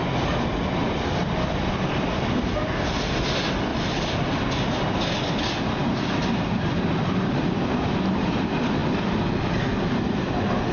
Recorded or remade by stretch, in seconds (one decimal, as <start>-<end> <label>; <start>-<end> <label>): 0.0-3.7 recorded; 3.7-4.2 remade; 4.2-8.8 recorded; 8.8-10.2 remade; 10.2-10.7 recorded